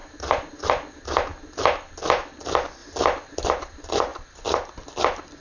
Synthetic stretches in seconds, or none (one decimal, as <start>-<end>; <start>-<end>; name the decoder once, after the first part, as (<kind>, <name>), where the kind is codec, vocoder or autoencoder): none

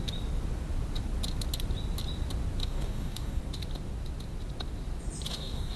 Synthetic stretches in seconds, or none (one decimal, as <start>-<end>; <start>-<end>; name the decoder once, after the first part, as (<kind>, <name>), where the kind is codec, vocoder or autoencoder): 2.6-3.4 (codec, DAC); 5.3-5.8

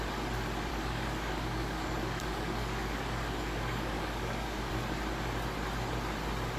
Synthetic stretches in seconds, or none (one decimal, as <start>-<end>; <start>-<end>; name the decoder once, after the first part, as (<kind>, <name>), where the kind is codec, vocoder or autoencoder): 0.7-4.7 (codec, DAC)

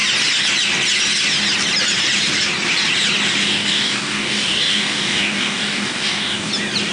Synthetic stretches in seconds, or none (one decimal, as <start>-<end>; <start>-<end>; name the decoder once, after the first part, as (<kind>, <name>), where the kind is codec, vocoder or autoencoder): 3.4-6.5 (codec, DAC)

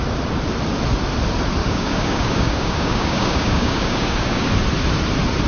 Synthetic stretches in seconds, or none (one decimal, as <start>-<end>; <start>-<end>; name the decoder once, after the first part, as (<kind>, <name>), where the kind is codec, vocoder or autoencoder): 1.6-4.5 (codec, DAC)